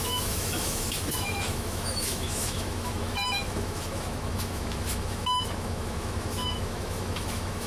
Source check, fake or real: fake